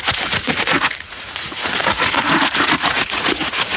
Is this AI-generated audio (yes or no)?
yes